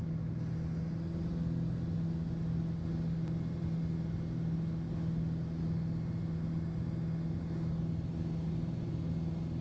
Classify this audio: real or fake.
real